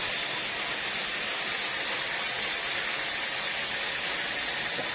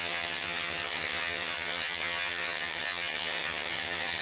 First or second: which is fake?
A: second